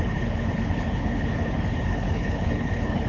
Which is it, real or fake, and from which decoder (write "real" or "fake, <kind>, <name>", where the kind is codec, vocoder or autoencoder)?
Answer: fake, codec, HILCodec